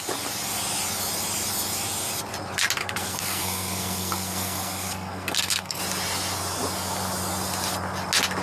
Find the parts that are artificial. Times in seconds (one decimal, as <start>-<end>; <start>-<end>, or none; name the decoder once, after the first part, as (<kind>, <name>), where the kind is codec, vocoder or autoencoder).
2.8-5.8 (codec, SNAC)